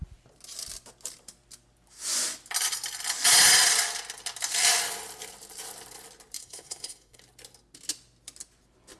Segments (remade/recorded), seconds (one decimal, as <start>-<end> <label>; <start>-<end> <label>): 0.0-6.4 recorded; 6.4-7.2 remade; 7.2-9.0 recorded